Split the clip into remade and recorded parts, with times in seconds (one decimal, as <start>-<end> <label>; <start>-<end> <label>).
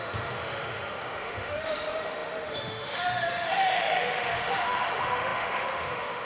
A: 0.0-6.2 remade